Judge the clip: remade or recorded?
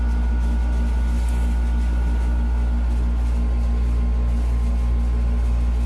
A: recorded